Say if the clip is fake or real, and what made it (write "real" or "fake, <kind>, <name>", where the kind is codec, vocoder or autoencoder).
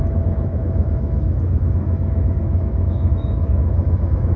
fake, autoencoder, DAC-VAE